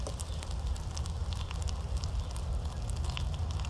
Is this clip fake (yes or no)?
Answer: no